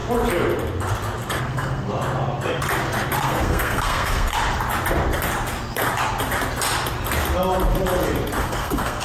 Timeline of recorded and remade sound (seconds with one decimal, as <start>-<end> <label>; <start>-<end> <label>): 0.0-1.4 recorded; 1.4-1.9 remade; 1.9-3.2 recorded; 3.2-4.3 remade; 4.3-8.4 recorded; 8.4-9.0 remade